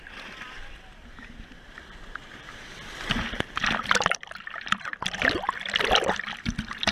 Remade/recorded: remade